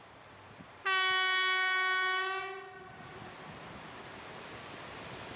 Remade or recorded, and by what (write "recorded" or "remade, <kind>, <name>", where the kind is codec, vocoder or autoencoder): recorded